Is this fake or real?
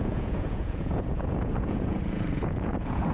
fake